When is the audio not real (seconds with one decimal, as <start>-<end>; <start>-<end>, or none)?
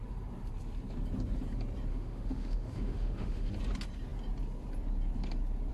1.9-3.5